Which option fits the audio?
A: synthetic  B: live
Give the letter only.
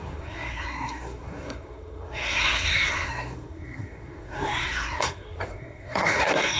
A